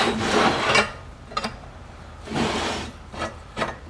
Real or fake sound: fake